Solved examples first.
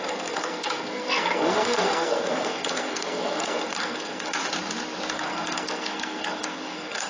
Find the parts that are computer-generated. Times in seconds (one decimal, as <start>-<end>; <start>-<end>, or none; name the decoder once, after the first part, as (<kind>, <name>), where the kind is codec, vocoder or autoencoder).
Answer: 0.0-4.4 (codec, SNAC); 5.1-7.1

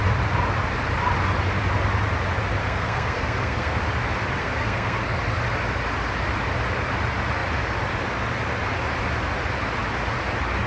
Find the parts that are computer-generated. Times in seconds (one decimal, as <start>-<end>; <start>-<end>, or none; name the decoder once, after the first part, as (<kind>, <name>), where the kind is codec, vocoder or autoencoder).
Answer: 2.6-3.8 (codec, SNAC); 4.4-5.2

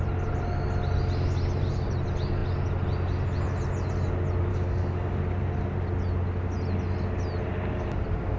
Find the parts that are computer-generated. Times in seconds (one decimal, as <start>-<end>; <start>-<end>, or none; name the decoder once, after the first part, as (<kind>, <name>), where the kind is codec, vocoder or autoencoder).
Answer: 4.5-5.2 (codec, DAC)

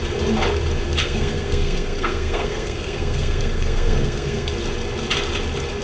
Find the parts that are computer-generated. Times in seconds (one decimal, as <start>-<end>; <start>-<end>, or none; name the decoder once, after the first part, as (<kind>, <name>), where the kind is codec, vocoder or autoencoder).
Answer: 1.0-4.5 (codec, SNAC)

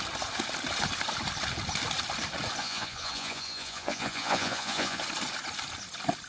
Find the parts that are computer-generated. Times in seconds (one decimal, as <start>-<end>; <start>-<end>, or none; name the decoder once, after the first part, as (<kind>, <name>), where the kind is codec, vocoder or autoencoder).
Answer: 2.6-5.0 (vocoder, Vocos)

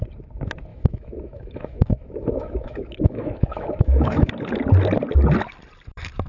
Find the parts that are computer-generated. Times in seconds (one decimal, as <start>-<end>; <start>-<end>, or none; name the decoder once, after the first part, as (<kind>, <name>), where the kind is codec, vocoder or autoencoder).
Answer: 0.7-4.3 (autoencoder, DAC-VAE)